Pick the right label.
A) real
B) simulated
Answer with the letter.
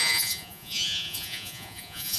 B